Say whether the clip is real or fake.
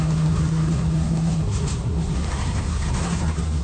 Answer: fake